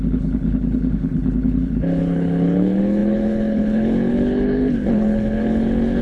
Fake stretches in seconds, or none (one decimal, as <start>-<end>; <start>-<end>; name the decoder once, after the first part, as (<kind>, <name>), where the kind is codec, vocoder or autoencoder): 0.0-6.0 (codec, HILCodec)